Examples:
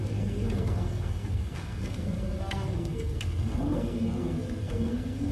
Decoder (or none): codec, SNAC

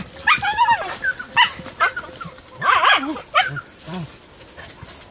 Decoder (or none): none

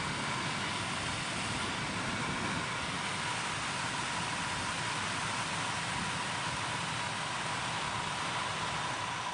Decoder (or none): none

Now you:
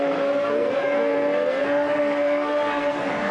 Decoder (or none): codec, SNAC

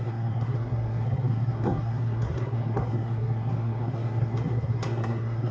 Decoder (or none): codec, SNAC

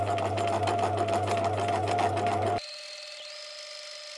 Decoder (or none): none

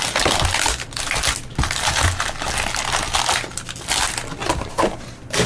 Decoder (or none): none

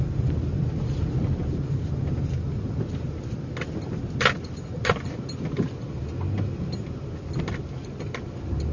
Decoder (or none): none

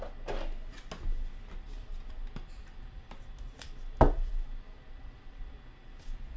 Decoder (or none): none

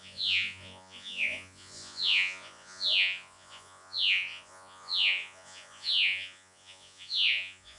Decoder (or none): vocoder, Vocos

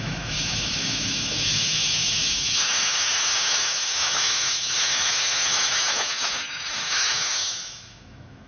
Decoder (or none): autoencoder, DAC-VAE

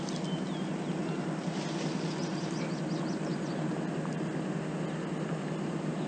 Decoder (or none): none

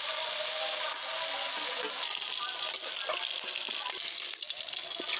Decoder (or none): none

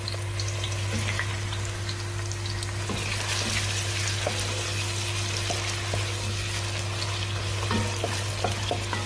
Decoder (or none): none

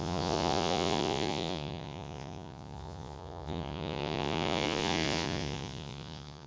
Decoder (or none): vocoder, Vocos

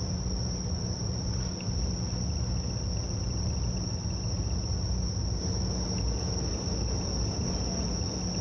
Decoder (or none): none